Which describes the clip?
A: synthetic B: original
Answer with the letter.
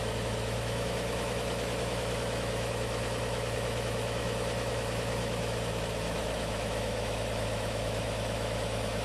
A